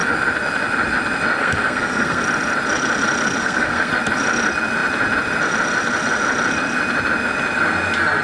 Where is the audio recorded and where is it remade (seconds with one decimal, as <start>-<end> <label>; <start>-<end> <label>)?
0.0-1.4 recorded; 1.4-2.2 remade; 2.2-3.4 recorded; 3.4-3.9 remade; 3.9-8.2 recorded